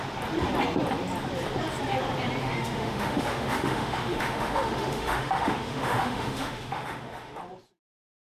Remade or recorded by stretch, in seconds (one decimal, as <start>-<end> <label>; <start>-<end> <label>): 0.0-2.4 recorded; 2.4-7.4 remade; 7.4-8.3 recorded